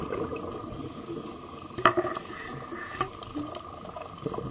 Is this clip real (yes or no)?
no